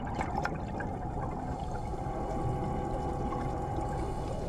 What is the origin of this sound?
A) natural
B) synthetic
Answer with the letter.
A